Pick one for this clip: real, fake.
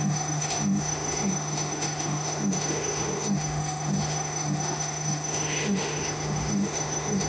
fake